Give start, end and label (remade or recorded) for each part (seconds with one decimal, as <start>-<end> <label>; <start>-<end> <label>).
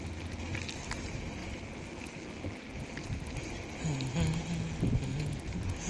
0.0-5.1 recorded; 5.1-5.9 remade